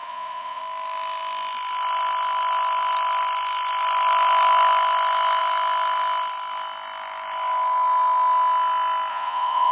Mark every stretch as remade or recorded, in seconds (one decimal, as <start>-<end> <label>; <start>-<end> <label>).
0.0-0.6 remade; 0.6-9.1 recorded; 9.1-9.7 remade